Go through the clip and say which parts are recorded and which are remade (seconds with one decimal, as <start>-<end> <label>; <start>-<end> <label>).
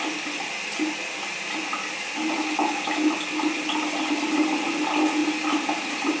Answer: 0.0-6.2 recorded